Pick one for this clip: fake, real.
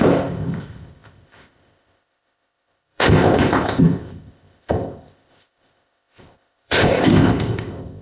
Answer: fake